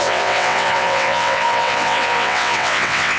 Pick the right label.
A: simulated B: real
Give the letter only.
A